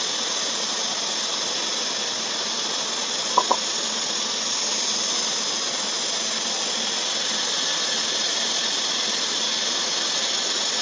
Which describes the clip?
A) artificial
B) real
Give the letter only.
B